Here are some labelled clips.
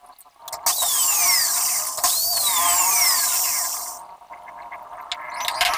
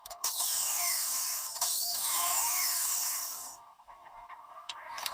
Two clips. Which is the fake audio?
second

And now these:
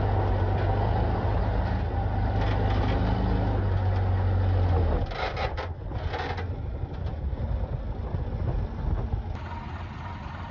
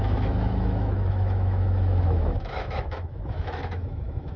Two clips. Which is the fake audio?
second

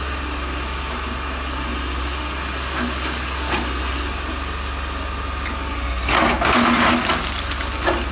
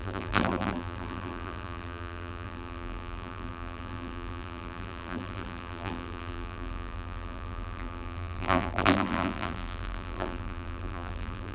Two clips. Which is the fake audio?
second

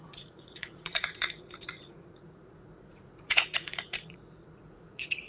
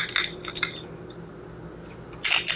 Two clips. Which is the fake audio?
first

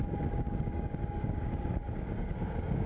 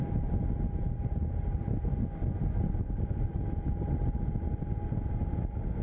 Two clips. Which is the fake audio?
first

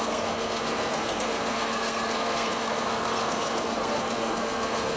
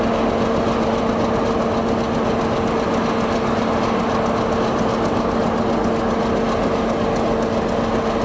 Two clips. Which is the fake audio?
first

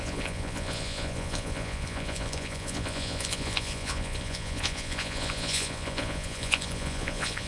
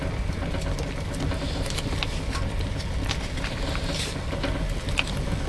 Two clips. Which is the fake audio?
first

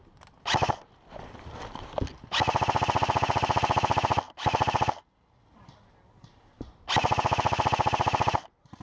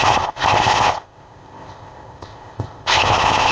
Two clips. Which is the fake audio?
second